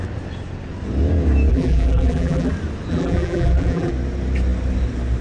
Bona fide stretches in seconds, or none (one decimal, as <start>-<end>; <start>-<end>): 0.0-1.5; 2.5-2.9; 3.9-5.2